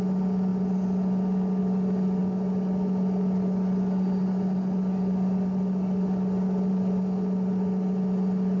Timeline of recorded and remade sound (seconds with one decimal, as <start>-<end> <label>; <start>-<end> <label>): 0.0-8.6 recorded